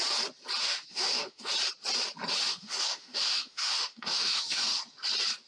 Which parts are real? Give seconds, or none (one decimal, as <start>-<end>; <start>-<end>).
0.0-0.6; 1.5-2.4; 4.8-5.5